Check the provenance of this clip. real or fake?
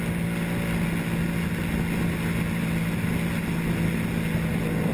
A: real